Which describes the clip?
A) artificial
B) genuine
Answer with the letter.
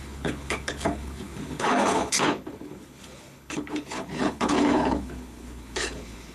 A